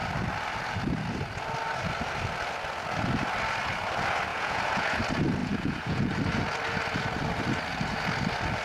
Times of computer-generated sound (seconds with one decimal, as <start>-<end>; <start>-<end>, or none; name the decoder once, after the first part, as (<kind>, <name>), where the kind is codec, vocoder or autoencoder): 4.3-5.0 (vocoder, Vocos); 5.4-6.1